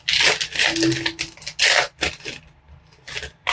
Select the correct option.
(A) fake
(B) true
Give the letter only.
B